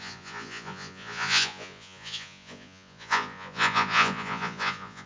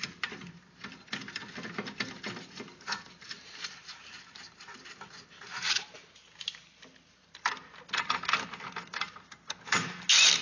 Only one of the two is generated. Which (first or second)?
first